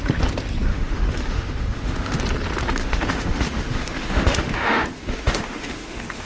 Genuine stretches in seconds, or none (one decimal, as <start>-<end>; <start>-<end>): 0.0-0.7; 2.2-2.8